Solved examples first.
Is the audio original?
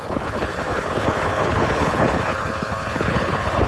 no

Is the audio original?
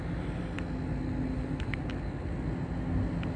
yes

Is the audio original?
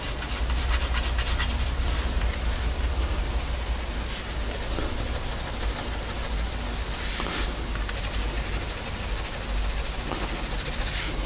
yes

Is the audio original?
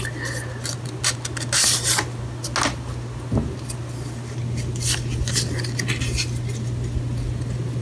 yes